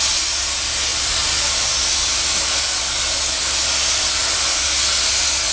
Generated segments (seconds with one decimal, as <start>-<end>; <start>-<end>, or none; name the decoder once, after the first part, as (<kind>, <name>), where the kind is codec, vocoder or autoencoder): none